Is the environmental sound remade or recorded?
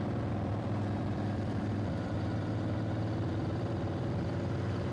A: remade